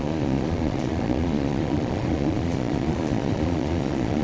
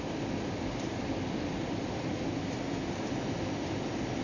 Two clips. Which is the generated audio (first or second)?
first